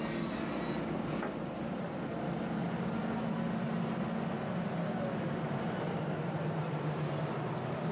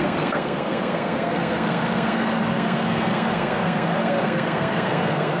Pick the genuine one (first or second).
first